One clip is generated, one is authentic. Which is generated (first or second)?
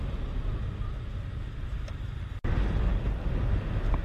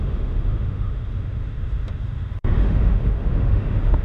second